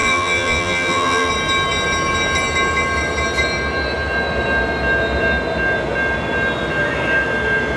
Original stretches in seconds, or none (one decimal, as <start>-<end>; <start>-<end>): 1.3-7.8